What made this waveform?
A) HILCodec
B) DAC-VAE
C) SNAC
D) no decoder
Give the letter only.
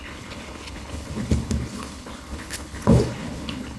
A